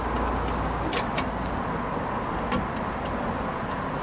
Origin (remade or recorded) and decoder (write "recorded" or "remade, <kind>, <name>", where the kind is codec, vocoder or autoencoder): recorded